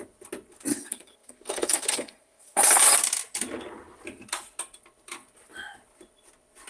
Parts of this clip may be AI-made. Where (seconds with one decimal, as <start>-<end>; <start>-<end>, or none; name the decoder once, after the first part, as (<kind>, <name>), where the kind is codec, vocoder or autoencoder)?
0.7-2.8 (codec, SNAC)